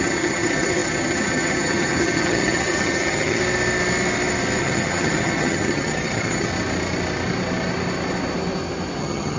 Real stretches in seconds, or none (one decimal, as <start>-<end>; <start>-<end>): 3.4-4.6; 6.5-9.0